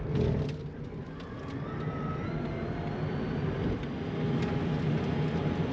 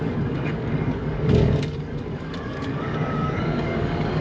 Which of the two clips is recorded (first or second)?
first